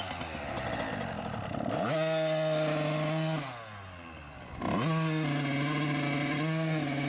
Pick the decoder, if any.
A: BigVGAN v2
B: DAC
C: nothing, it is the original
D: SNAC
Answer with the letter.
C